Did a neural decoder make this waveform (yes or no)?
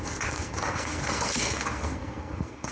yes